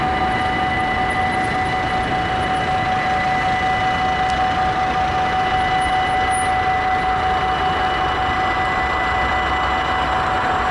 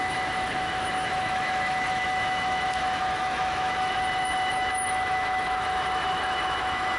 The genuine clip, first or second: first